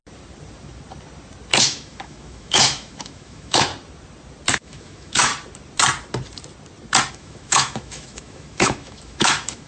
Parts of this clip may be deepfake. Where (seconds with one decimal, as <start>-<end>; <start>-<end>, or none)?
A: 1.6-3.7; 4.5-5.3; 7.1-9.7